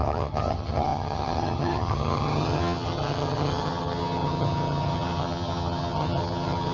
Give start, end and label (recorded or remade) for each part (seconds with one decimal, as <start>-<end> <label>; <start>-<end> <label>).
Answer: 0.0-6.7 remade